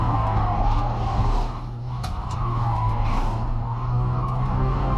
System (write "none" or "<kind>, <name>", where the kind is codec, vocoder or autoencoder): codec, DAC